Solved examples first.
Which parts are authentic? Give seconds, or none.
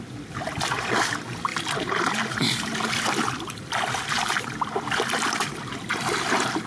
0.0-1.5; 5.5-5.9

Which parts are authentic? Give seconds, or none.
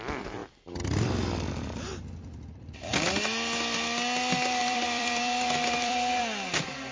0.0-4.6; 6.2-6.9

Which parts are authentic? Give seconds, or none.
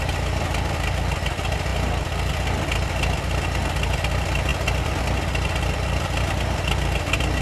0.0-7.4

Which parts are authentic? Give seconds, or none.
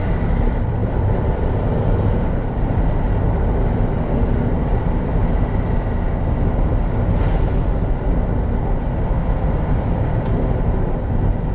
0.8-4.1; 5.2-7.3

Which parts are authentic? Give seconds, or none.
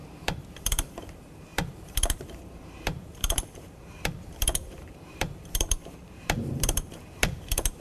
none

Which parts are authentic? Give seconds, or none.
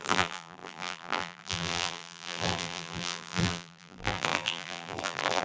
none